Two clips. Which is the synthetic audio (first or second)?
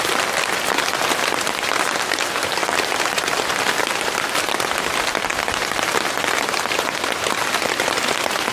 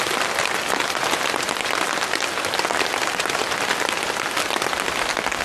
first